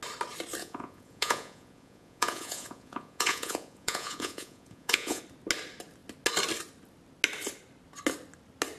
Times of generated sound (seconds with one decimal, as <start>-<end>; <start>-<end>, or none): 0.6-5.2